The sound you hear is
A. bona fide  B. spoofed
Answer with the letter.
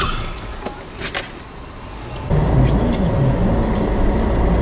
A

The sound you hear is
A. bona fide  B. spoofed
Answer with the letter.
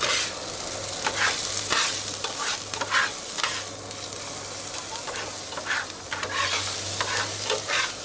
A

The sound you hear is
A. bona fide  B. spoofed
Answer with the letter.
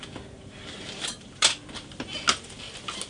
A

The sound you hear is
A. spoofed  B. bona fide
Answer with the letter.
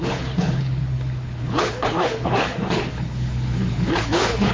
A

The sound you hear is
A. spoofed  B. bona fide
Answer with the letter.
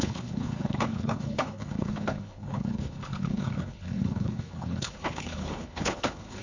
A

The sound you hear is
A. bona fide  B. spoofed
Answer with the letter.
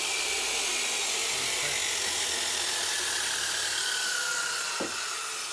A